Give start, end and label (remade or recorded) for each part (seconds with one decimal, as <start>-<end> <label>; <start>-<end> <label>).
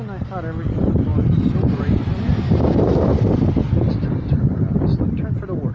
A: 0.0-1.1 recorded; 1.1-1.9 remade; 1.9-5.7 recorded